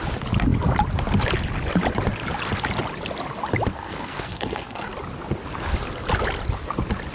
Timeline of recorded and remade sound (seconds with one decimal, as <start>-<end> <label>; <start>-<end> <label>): 0.0-3.7 recorded; 3.7-4.9 remade; 4.9-7.1 recorded